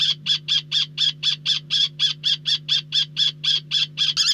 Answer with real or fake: real